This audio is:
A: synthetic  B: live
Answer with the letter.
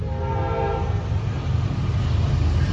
B